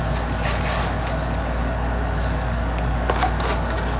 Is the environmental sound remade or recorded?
remade